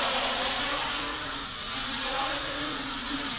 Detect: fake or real fake